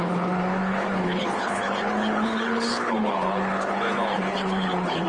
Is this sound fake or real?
fake